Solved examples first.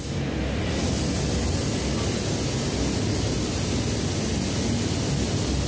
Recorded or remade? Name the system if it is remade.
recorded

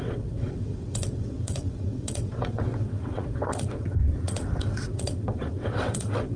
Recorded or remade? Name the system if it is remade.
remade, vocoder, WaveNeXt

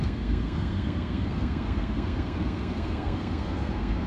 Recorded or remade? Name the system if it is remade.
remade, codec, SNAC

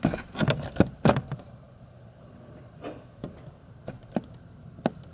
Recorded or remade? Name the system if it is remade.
recorded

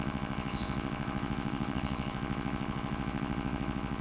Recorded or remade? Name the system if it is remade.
remade, vocoder, WaveNeXt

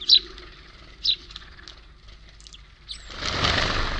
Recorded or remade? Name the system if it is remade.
recorded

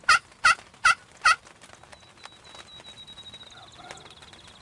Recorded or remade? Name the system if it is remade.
recorded